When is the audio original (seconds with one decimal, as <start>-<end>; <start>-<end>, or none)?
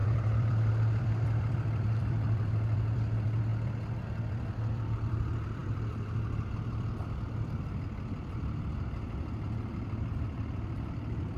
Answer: none